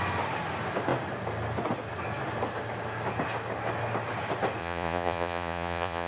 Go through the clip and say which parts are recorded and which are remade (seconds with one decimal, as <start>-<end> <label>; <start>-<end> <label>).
0.0-4.6 recorded; 4.6-6.1 remade